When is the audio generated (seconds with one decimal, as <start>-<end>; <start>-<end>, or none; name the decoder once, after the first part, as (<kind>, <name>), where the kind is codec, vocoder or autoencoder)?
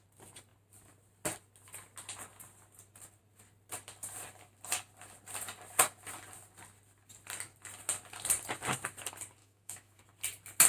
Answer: 9.4-10.0 (autoencoder, DAC-VAE)